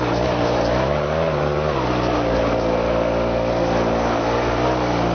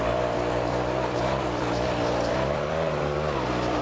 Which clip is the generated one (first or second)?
second